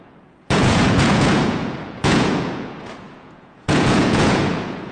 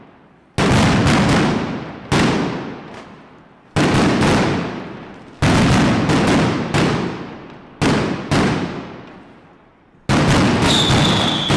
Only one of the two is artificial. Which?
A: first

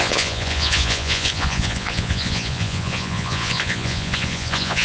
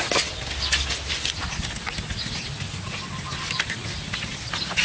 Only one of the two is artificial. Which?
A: first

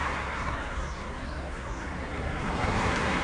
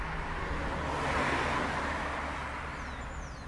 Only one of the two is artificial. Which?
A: first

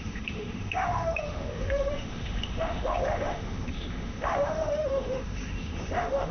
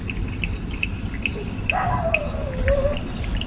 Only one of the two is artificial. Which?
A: first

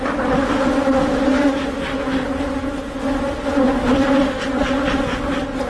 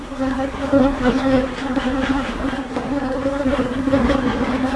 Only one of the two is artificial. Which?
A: second